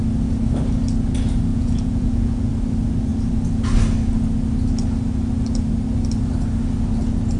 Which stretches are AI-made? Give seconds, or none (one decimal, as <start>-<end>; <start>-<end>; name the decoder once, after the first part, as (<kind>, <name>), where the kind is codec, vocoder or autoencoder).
1.5-2.5 (vocoder, Vocos)

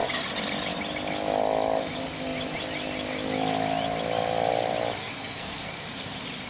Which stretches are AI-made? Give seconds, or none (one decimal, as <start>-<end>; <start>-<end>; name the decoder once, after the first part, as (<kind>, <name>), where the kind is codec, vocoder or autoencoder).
5.0-5.7 (codec, SNAC)

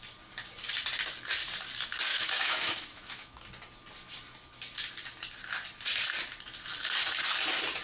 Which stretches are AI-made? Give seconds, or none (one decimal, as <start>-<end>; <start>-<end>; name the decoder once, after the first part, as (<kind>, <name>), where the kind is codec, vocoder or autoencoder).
2.1-3.4 (autoencoder, DAC-VAE)

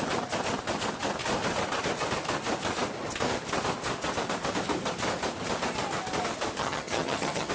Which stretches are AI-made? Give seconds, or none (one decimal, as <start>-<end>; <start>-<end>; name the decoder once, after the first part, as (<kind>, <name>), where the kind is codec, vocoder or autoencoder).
6.6-7.5 (vocoder, HiFi-GAN)

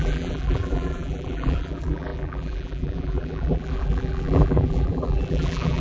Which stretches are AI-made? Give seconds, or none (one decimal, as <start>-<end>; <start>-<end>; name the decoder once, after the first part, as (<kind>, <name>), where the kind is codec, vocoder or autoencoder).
0.0-5.8 (vocoder, BigVGAN v2)

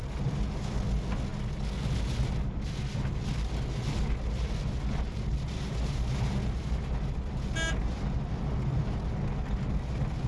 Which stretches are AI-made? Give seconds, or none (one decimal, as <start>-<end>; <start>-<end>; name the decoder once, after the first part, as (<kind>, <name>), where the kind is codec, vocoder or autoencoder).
none

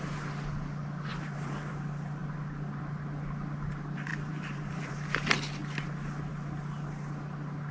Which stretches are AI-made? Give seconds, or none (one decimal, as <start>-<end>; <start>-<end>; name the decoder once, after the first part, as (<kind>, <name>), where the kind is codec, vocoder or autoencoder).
1.1-1.7 (vocoder, BigVGAN v2); 4.1-4.9

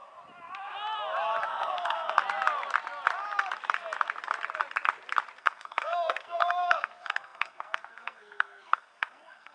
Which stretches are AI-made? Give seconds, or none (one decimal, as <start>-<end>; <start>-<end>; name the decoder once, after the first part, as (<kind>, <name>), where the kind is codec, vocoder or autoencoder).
1.4-2.2 (codec, SNAC); 5.4-9.5